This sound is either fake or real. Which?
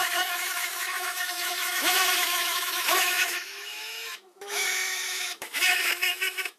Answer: fake